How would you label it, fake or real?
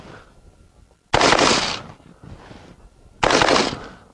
real